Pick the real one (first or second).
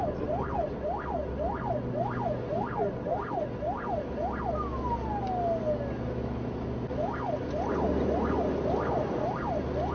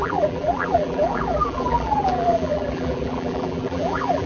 first